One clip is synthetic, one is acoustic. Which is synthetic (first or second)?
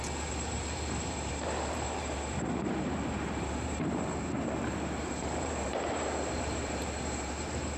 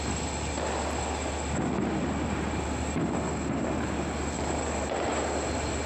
first